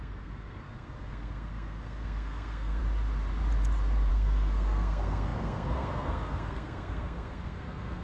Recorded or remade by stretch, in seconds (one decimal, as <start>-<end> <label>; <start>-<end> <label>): 0.0-2.8 remade; 2.8-4.1 recorded; 4.1-8.0 remade